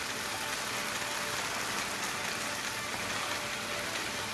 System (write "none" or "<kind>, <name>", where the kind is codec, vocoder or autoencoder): none